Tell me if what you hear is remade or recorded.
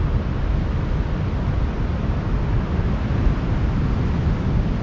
recorded